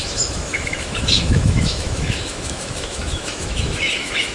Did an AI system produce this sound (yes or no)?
yes